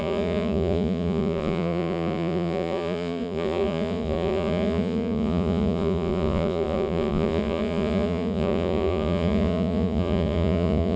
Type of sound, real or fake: fake